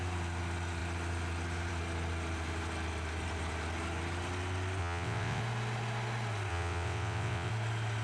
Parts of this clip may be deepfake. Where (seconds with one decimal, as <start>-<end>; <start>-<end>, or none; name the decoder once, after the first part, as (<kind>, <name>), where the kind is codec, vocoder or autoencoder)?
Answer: 4.8-5.4 (vocoder, WaveNeXt); 6.5-7.5